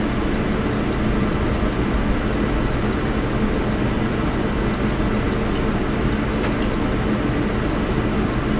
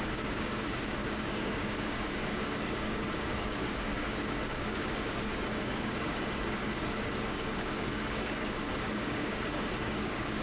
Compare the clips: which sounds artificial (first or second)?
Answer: second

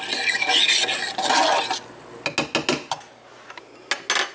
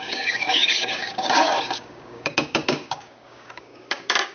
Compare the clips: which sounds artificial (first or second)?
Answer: second